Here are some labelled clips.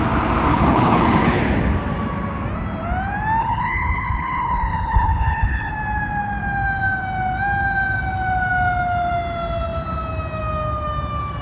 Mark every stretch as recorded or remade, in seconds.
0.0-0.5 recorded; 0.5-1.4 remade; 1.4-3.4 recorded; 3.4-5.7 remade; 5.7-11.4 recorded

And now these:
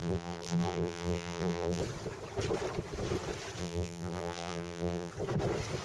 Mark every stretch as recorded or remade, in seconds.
0.0-1.8 remade; 1.8-3.6 recorded; 3.6-5.1 remade; 5.1-5.8 recorded

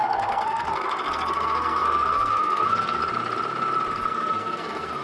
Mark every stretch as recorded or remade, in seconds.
0.0-3.0 remade; 3.0-3.9 recorded; 3.9-5.0 remade